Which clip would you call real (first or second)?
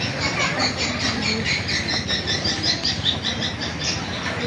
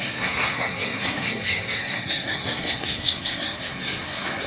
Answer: first